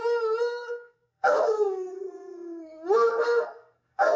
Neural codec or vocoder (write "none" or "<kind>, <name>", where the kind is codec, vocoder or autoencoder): codec, SNAC